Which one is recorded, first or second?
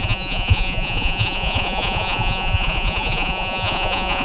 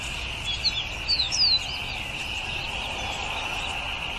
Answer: second